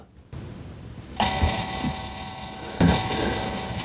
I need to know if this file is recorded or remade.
recorded